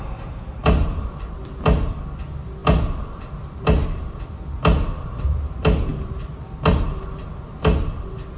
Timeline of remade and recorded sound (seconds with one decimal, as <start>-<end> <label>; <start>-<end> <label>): 0.0-8.4 recorded